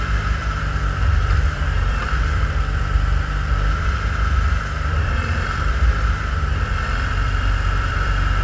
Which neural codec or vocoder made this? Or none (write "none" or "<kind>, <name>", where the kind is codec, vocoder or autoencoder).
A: vocoder, BigVGAN v2